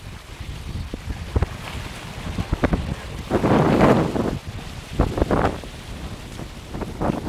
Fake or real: real